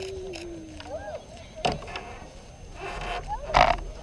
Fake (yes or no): no